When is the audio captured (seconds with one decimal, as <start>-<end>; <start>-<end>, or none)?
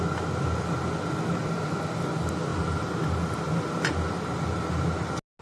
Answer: 0.0-2.5; 3.1-5.4